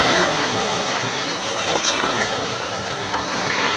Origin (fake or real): fake